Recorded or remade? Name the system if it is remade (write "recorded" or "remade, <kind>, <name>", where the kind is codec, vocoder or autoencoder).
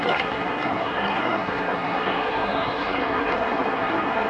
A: remade, codec, SNAC